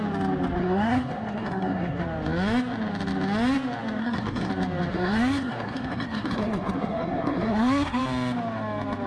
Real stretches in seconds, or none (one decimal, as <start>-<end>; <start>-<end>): 0.0-0.6; 2.0-4.0; 4.5-4.9; 8.0-9.1